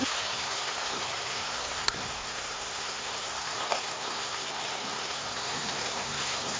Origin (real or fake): fake